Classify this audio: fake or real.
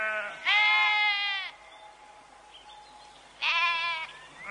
real